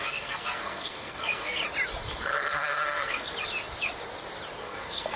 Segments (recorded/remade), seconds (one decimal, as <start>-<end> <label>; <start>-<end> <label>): 0.0-1.6 remade; 1.6-2.2 recorded; 2.2-3.3 remade; 3.3-4.6 recorded; 4.6-5.2 remade